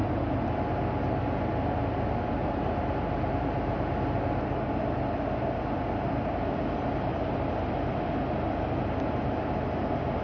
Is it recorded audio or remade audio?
recorded